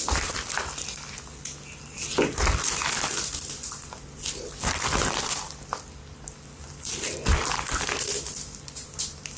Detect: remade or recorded recorded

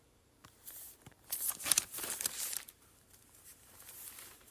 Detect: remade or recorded remade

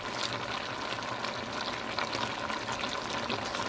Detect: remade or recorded recorded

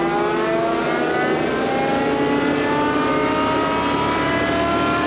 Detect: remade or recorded recorded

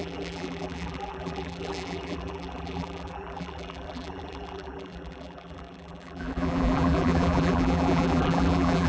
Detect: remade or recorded remade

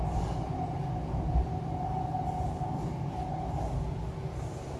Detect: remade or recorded recorded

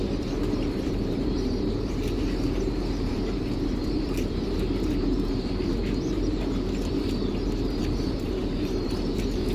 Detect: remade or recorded remade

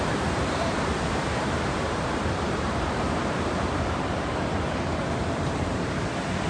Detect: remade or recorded remade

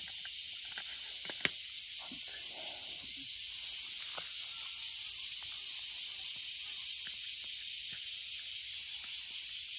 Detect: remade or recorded recorded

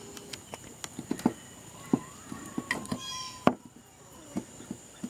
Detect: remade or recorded recorded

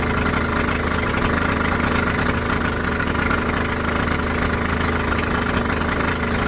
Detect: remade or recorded recorded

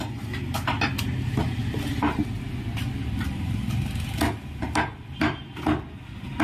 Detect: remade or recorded recorded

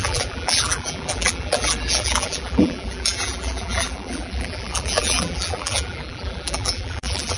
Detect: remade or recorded remade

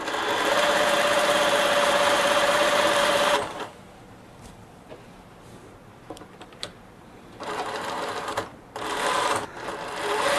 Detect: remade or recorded remade